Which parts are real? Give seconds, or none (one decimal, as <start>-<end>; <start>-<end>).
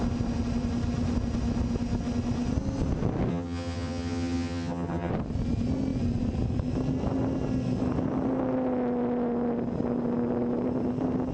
0.0-3.3; 5.1-11.3